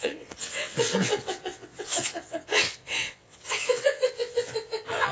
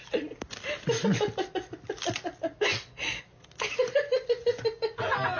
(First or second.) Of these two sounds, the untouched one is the second